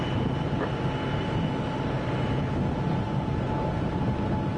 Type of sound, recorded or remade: recorded